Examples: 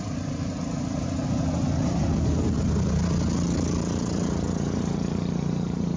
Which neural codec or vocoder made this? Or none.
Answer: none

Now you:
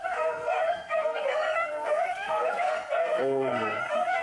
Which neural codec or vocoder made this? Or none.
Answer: codec, SNAC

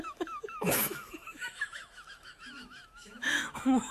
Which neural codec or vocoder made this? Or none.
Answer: autoencoder, DAC-VAE